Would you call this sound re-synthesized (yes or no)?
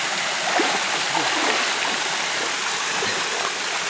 no